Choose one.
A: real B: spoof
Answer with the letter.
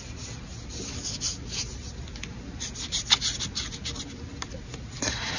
A